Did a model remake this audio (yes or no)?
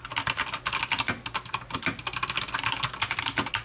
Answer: no